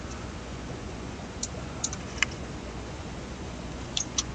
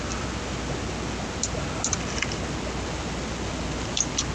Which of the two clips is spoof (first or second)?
first